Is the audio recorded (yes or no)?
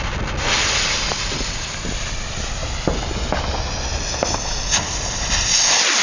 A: yes